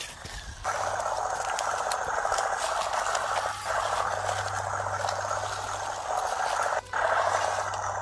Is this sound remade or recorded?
recorded